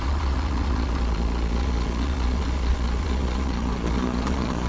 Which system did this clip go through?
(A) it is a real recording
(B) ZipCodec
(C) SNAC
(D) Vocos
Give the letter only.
D